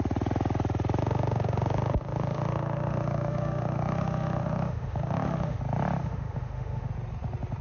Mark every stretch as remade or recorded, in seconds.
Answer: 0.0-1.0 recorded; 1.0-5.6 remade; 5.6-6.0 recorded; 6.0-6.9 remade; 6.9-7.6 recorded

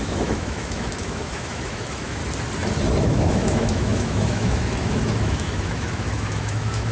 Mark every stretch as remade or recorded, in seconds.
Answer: 0.0-2.2 remade; 2.2-3.0 recorded; 3.0-6.9 remade

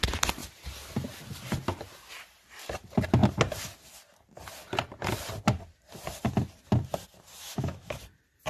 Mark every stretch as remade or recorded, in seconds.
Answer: 0.0-7.4 recorded; 7.4-8.0 remade; 8.0-8.5 recorded

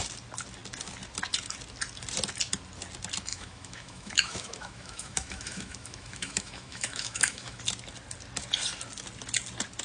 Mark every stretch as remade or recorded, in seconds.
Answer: 0.0-3.3 recorded; 3.3-7.6 remade; 7.6-9.8 recorded

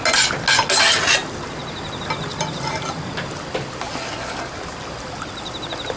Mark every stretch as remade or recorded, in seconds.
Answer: 0.0-6.0 recorded